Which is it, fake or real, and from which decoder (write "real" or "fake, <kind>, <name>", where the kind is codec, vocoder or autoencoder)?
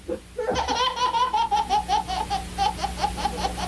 real